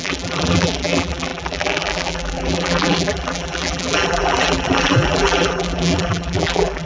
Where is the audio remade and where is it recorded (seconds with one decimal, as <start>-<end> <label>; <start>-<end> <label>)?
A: 0.0-6.9 remade

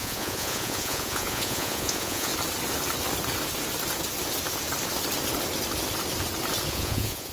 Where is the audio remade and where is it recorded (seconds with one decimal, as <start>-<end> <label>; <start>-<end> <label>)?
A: 0.0-2.3 remade; 2.3-6.7 recorded; 6.7-7.3 remade

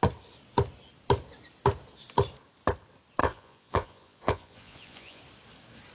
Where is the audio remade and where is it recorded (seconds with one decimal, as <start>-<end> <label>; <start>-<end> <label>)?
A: 0.0-3.2 recorded; 3.2-5.2 remade; 5.2-5.9 recorded

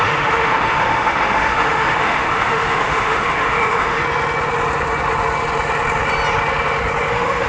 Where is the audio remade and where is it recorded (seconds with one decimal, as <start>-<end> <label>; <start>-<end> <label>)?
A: 0.0-4.0 remade; 4.0-7.1 recorded; 7.1-7.5 remade